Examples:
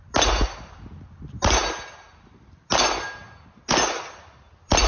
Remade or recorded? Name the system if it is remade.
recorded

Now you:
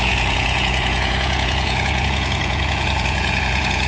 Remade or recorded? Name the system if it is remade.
remade, vocoder, Vocos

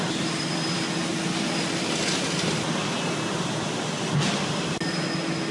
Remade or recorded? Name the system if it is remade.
recorded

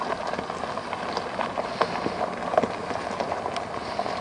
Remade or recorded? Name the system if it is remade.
recorded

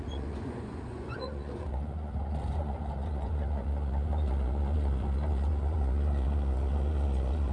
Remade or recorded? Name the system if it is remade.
remade, vocoder, Vocos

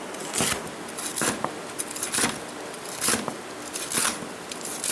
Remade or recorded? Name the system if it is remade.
recorded